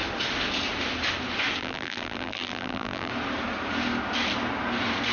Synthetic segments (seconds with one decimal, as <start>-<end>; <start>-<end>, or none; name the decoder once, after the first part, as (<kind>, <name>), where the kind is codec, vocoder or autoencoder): 1.6-3.1 (vocoder, BigVGAN v2)